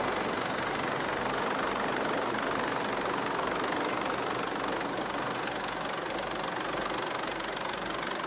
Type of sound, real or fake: real